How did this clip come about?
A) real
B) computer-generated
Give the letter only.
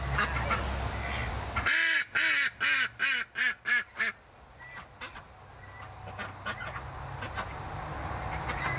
A